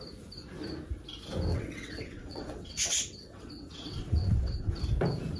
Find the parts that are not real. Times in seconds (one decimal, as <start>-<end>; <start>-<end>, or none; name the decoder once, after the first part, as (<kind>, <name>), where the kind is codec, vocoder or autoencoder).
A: 1.5-4.7 (vocoder, WaveNeXt)